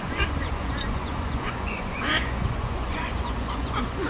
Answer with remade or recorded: remade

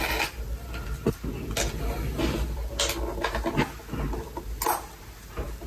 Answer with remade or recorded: recorded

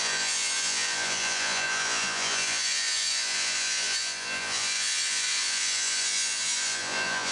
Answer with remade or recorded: remade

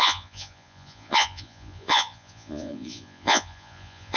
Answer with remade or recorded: remade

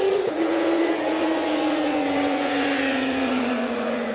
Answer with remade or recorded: remade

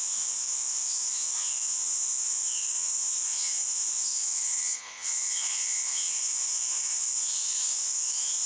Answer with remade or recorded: remade